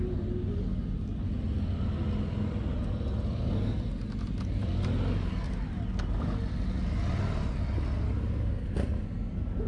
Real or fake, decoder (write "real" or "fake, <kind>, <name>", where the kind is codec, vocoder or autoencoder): real